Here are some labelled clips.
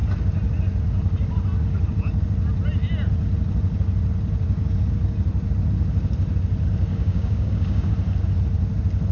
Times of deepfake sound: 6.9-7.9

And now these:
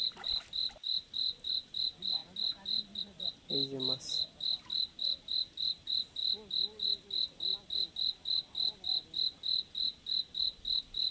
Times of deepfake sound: none

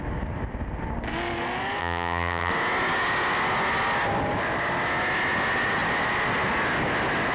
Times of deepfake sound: 1.8-2.5

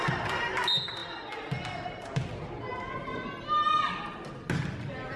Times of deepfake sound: none

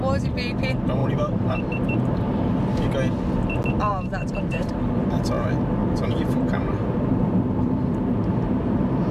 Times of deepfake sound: 1.0-2.8; 3.9-4.7; 5.8-9.1

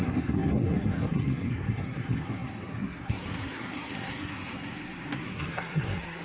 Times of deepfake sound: 0.0-6.2

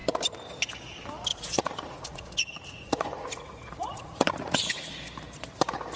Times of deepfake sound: 1.3-4.9